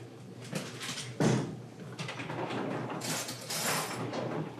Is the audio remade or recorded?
recorded